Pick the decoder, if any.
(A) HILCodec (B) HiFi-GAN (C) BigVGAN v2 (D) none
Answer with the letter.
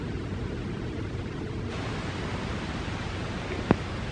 D